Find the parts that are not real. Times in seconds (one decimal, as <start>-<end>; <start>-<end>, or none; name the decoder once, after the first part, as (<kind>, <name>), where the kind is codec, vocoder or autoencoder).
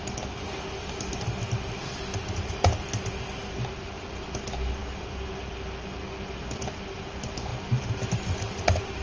none